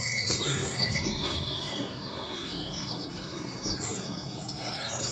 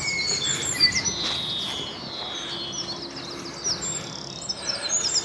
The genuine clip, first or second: second